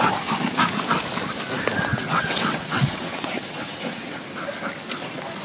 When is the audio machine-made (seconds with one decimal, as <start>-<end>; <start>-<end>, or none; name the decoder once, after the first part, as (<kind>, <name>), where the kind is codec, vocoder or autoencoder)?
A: 1.9-4.2 (vocoder, WaveNeXt)